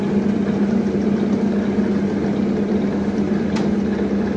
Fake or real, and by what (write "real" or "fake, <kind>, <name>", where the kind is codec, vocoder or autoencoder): real